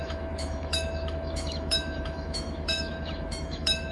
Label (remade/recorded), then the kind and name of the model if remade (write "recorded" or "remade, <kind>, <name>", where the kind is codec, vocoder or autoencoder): remade, autoencoder, DAC-VAE